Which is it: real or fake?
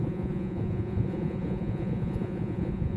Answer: fake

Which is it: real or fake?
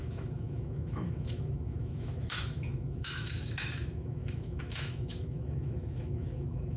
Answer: fake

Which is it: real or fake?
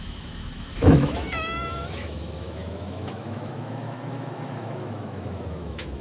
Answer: fake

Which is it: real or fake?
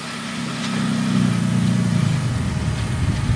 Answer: real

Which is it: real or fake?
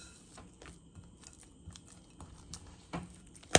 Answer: real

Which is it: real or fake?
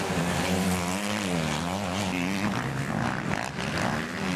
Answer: real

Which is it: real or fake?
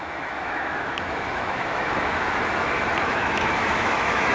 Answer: fake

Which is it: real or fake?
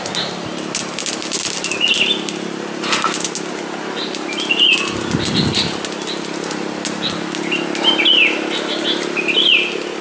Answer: real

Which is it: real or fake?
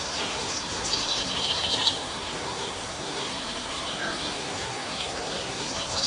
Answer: fake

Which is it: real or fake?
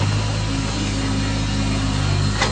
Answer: real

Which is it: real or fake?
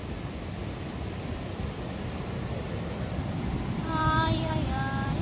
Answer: fake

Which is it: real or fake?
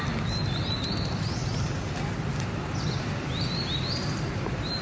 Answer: real